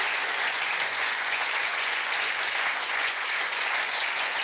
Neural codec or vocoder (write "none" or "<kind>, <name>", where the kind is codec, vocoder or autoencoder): vocoder, Vocos